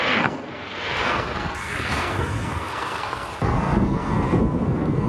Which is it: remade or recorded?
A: remade